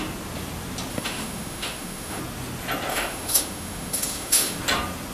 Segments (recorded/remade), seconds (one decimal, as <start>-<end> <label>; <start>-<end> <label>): 0.0-0.9 recorded; 0.9-2.2 remade; 2.2-2.9 recorded; 2.9-4.6 remade; 4.6-5.1 recorded